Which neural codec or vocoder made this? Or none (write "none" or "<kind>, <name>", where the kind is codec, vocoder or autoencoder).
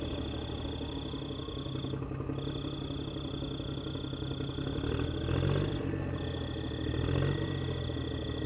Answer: none